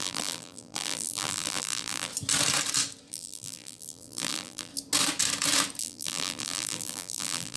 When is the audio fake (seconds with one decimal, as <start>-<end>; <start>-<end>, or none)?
0.0-2.1; 3.1-4.7; 5.8-7.6